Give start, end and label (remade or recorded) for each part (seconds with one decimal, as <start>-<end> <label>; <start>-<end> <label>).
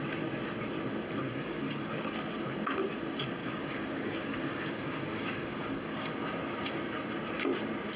0.0-1.2 recorded; 1.2-1.9 remade; 1.9-3.4 recorded; 3.4-6.1 remade; 6.1-8.0 recorded